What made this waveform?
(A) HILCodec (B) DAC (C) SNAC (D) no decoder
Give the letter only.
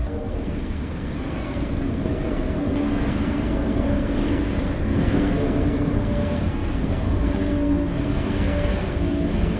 C